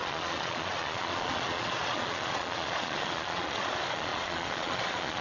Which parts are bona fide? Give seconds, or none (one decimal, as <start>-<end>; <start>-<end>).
none